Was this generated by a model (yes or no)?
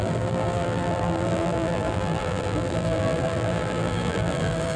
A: yes